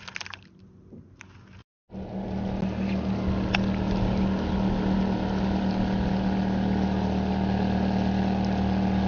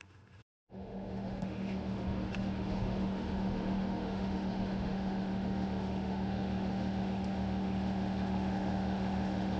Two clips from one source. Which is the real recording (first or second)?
first